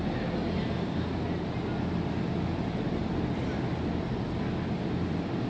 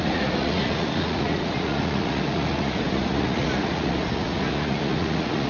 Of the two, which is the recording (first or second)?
first